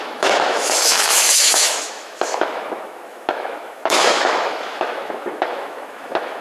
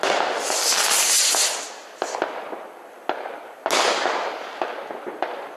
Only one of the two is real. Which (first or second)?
second